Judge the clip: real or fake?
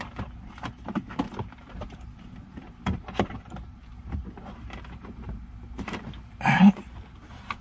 fake